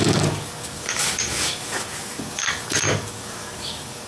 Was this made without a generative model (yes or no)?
no